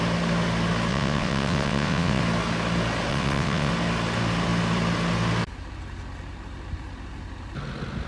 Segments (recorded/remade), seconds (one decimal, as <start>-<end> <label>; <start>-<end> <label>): 0.0-0.9 recorded; 0.9-2.2 remade; 2.2-3.1 recorded; 3.1-3.7 remade; 3.7-8.1 recorded